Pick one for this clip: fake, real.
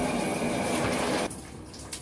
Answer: real